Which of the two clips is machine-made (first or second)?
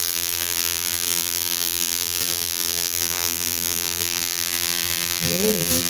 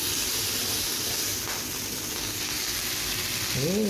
first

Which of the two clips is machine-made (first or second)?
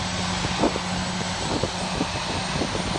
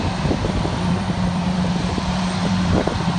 second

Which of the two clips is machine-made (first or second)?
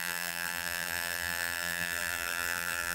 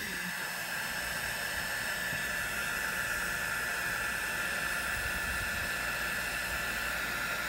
first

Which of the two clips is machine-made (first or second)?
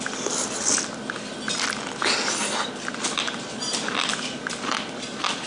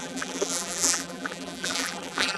second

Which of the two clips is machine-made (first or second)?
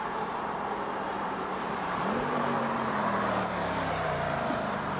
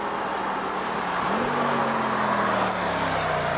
first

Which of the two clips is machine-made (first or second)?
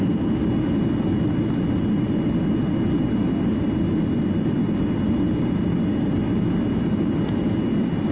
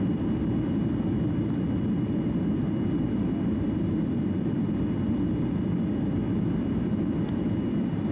second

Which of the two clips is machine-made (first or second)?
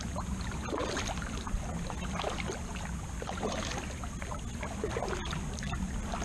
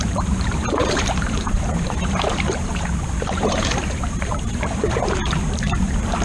second